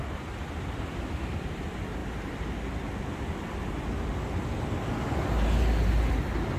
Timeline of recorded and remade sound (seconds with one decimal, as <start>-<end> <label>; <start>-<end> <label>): 0.0-2.0 remade; 2.0-6.0 recorded; 6.0-6.6 remade